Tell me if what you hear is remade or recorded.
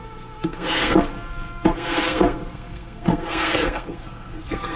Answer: remade